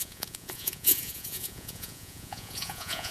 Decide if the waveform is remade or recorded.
remade